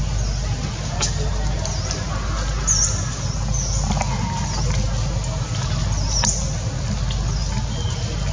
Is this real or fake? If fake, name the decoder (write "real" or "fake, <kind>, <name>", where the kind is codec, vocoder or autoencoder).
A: real